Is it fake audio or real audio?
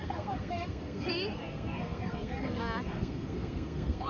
fake